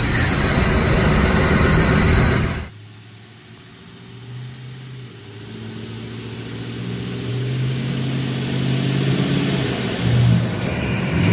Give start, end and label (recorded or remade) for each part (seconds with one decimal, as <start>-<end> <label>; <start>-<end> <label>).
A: 0.0-7.3 recorded; 7.3-7.9 remade; 7.9-11.3 recorded